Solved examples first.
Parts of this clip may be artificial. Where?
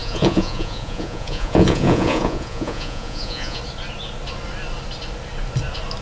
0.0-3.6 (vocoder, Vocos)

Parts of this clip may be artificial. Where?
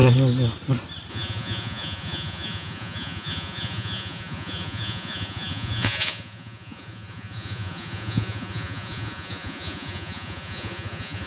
1.1-11.3 (vocoder, Vocos)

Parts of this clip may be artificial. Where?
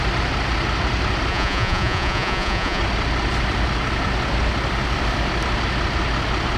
1.3-2.8 (vocoder, Vocos)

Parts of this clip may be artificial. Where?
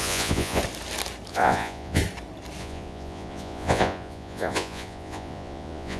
0.0-0.6 (vocoder, Vocos); 1.3-2.0; 2.6-6.0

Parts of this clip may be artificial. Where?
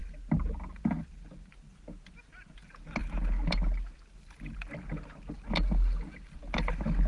none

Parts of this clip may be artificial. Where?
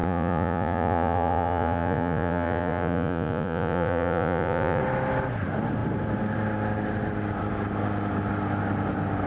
0.0-4.8 (vocoder, Vocos)